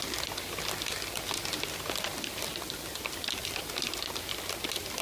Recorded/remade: recorded